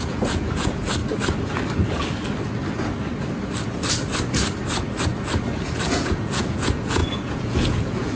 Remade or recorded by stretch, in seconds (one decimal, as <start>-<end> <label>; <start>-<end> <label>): 0.0-1.0 remade; 1.0-5.9 recorded; 5.9-8.2 remade